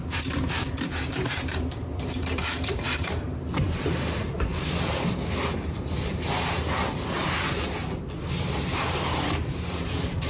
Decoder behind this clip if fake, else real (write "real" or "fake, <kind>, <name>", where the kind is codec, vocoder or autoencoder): fake, vocoder, BigVGAN v2